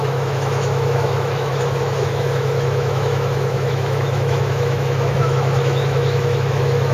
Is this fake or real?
fake